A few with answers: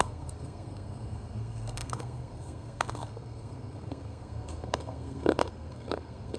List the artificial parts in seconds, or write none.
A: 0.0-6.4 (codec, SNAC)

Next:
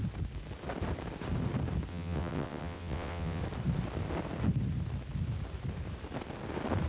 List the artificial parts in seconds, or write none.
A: 1.9-3.4 (vocoder, WaveNeXt)

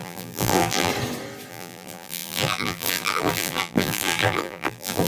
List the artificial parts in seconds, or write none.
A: 0.0-0.9 (vocoder, BigVGAN v2); 1.5-5.1

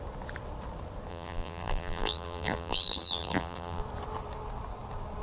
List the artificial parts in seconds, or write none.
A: 1.1-3.8 (vocoder, BigVGAN v2)

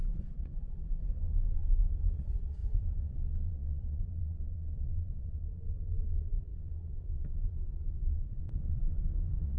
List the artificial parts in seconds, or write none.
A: 0.0-9.6 (vocoder, Vocos)

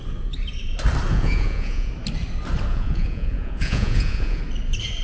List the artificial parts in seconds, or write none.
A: 1.1-1.9 (vocoder, Vocos); 2.7-4.4